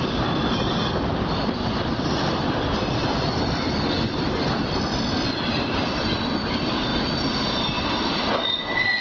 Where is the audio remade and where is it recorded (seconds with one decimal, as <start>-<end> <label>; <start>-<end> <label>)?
0.0-9.0 recorded